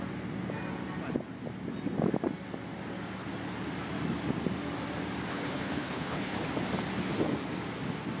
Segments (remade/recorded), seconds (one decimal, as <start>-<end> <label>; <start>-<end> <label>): 0.0-5.3 recorded; 5.3-6.5 remade; 6.5-8.2 recorded